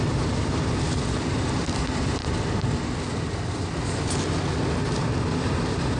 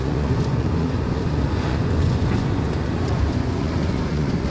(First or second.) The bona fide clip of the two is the first